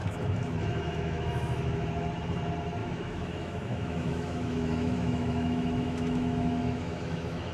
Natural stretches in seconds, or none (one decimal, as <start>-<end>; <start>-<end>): 2.1-2.8